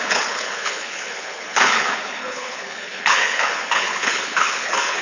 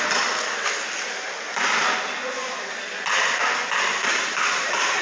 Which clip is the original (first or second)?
second